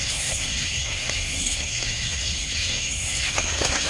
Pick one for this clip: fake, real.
fake